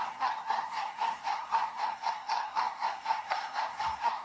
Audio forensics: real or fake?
fake